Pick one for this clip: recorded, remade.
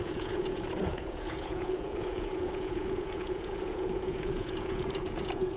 remade